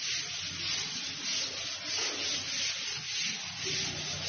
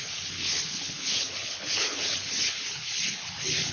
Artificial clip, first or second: second